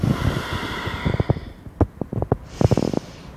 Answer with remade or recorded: recorded